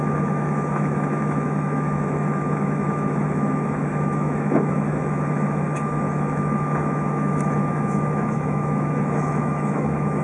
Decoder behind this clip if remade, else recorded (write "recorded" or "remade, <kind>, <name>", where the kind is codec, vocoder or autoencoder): remade, autoencoder, DAC-VAE